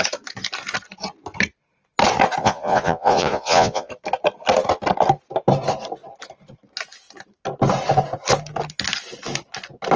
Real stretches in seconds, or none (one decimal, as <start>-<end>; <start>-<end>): 0.0-2.4; 3.9-10.0